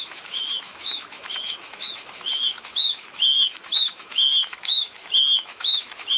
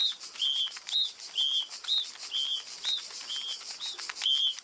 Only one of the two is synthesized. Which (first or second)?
first